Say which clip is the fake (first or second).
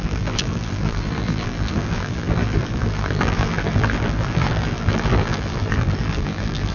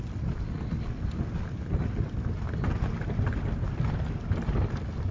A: first